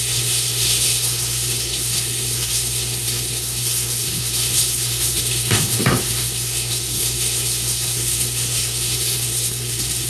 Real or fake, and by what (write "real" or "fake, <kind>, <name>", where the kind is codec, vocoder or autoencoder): fake, codec, SNAC